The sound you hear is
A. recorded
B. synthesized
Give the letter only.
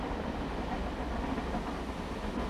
A